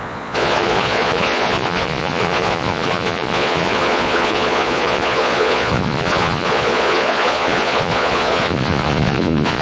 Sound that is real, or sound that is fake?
fake